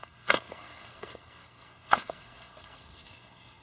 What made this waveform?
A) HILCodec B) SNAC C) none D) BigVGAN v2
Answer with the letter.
B